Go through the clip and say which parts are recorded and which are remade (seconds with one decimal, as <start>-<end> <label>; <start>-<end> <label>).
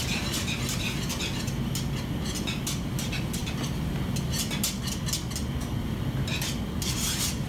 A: 0.0-7.5 recorded